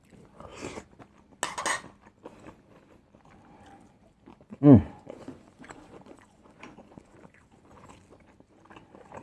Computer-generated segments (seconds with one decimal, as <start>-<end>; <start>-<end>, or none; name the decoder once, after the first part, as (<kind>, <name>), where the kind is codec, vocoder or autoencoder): 4.3-7.9 (vocoder, Vocos)